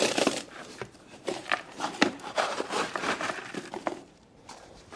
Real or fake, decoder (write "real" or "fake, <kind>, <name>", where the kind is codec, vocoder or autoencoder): fake, vocoder, BigVGAN v2